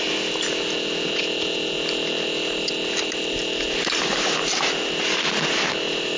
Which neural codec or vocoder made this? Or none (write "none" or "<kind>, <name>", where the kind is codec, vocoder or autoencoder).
none